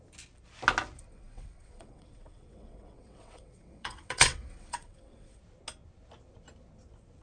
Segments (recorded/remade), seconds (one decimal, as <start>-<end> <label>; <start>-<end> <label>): 0.0-1.1 recorded; 1.1-5.4 remade; 5.4-7.2 recorded